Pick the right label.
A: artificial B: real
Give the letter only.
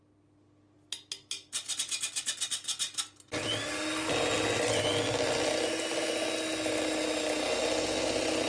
B